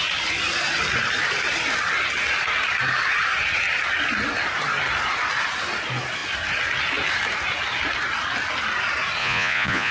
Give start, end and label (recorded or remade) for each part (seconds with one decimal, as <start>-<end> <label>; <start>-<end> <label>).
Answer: 0.0-9.2 recorded; 9.2-9.9 remade